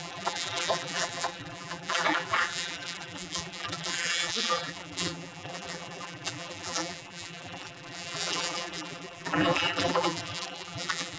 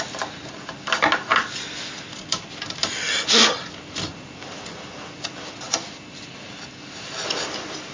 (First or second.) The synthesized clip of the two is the first